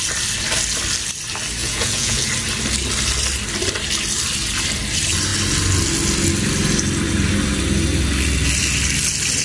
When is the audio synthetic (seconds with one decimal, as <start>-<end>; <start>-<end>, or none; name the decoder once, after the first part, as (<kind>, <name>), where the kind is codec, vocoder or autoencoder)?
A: 1.6-2.3 (vocoder, Vocos)